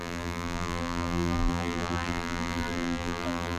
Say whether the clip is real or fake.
fake